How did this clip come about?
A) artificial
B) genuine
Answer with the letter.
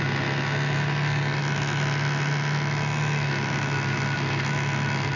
B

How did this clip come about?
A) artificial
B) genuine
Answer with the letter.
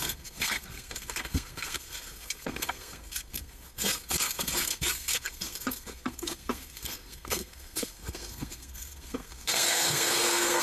A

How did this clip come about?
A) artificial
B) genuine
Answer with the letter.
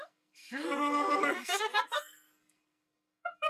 A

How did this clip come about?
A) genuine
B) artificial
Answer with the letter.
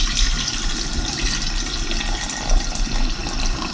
A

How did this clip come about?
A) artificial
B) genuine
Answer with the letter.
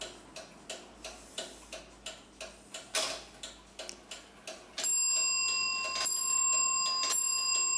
B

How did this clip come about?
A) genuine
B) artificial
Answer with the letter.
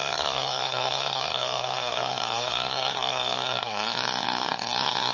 B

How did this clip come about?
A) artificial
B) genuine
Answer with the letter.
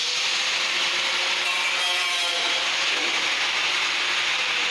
B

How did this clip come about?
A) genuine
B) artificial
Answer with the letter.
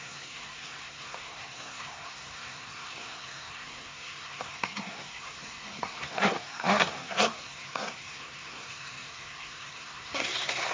B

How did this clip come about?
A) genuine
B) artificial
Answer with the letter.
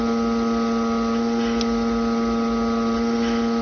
A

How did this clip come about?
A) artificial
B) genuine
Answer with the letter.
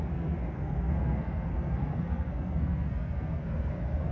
A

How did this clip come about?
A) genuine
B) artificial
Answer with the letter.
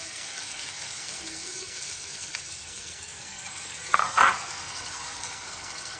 B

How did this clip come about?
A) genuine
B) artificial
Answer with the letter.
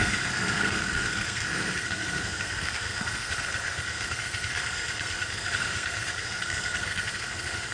B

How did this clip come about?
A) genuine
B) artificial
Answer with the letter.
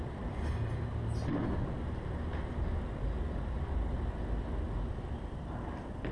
A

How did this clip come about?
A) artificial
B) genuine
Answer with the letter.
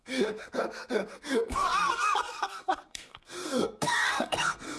A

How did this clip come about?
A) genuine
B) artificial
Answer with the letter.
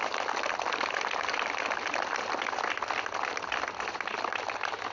A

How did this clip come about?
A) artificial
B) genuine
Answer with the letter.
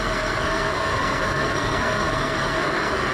A